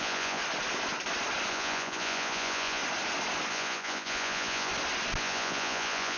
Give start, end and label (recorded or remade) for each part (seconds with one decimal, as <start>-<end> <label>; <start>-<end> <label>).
0.0-0.4 remade; 0.4-1.5 recorded; 1.5-2.8 remade; 2.8-3.5 recorded; 3.5-4.7 remade; 4.7-5.2 recorded; 5.2-6.2 remade